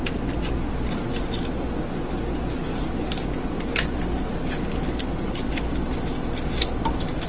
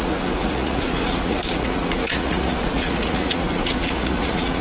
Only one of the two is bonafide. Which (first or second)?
first